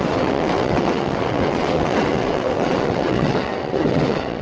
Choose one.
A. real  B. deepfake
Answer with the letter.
B